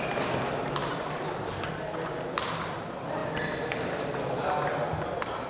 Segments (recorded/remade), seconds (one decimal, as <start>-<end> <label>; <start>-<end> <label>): 0.0-5.5 recorded